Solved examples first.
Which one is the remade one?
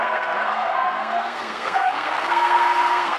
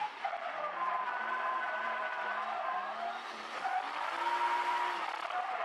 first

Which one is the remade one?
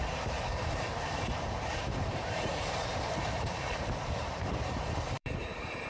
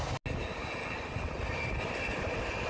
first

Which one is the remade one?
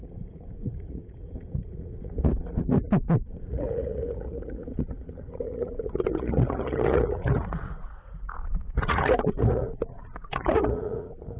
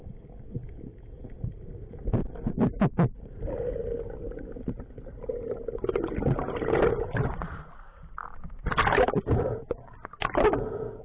first